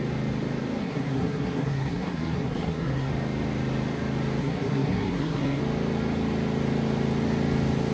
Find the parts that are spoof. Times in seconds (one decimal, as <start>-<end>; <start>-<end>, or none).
0.8-3.1; 4.4-5.6